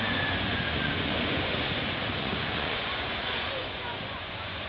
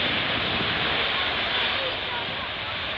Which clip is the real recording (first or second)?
second